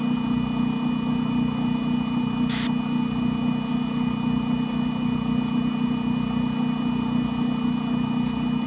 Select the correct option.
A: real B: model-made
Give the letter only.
A